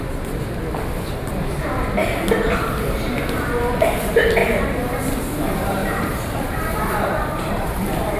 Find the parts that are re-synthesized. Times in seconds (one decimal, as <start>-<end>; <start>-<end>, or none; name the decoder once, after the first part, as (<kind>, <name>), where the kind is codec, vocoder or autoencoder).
4.4-5.0 (vocoder, BigVGAN v2); 5.8-8.2